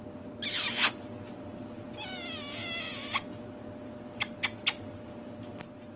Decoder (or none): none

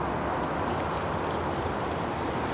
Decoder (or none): none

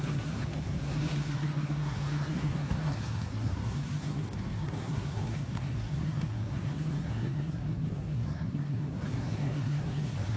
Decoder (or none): codec, SNAC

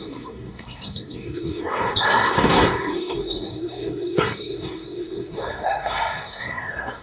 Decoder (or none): codec, SNAC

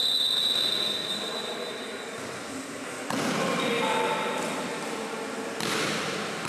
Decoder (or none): none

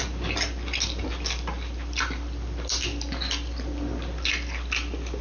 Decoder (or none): none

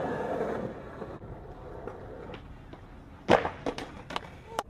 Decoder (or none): none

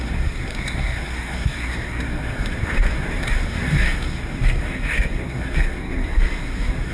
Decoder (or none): codec, SNAC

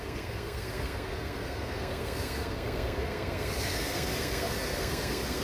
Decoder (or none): codec, SNAC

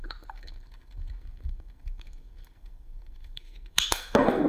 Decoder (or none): codec, SNAC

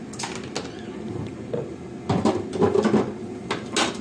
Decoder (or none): none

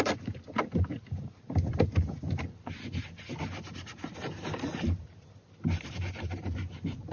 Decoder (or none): none